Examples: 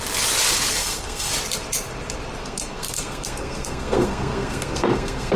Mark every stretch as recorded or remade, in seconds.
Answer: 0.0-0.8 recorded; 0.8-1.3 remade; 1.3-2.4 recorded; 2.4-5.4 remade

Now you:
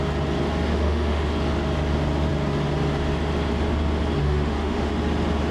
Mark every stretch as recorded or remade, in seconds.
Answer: 0.0-0.7 recorded; 0.7-1.3 remade; 1.3-4.2 recorded; 4.2-4.9 remade; 4.9-5.5 recorded

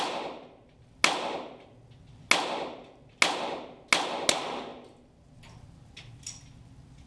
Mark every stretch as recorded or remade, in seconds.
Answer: 0.0-7.1 recorded

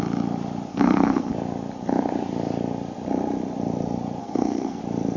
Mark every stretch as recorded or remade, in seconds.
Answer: 0.0-0.7 recorded; 0.7-1.3 remade; 1.3-4.2 recorded; 4.2-4.8 remade; 4.8-5.2 recorded